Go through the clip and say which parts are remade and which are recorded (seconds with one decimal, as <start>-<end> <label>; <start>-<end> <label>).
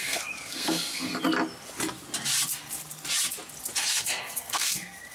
0.0-1.1 remade; 1.1-3.8 recorded; 3.8-5.1 remade